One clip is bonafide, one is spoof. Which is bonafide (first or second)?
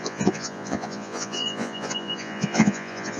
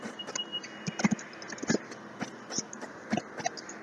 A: second